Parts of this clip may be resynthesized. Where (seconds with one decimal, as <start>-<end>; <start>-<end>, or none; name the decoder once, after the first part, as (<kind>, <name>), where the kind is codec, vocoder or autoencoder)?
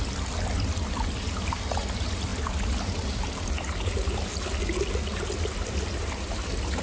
none